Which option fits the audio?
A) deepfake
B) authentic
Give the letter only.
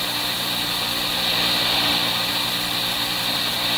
B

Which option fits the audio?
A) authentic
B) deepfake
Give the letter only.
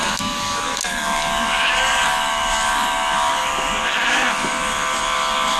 B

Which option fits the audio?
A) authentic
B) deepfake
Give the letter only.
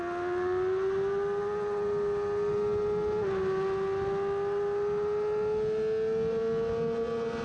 A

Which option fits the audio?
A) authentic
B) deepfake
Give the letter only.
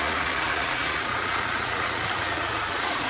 B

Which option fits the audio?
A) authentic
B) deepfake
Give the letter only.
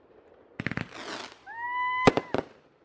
A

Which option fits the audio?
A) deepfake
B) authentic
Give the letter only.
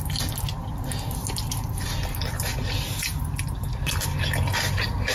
B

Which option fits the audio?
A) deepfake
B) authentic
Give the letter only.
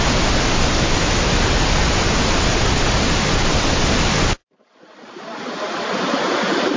B